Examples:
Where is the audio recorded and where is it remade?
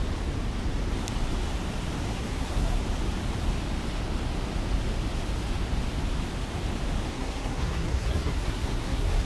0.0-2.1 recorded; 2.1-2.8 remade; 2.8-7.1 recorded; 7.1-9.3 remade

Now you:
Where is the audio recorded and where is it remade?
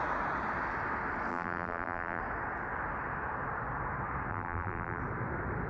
0.0-1.3 recorded; 1.3-2.2 remade; 2.2-4.3 recorded; 4.3-5.0 remade; 5.0-5.7 recorded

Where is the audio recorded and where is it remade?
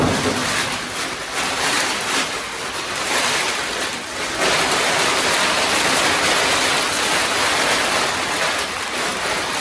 0.0-0.4 recorded; 0.4-4.0 remade; 4.0-9.6 recorded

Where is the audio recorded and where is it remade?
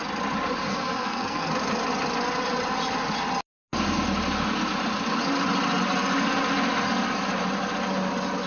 0.0-0.7 recorded; 0.7-1.5 remade; 1.5-8.5 recorded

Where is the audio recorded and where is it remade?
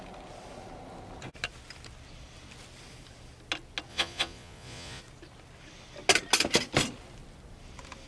0.0-3.9 recorded; 3.9-5.0 remade; 5.0-8.1 recorded